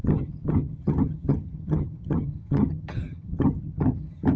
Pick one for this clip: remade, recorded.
remade